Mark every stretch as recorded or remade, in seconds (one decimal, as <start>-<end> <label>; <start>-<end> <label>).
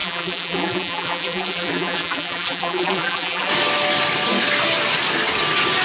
0.0-3.5 remade; 3.5-5.8 recorded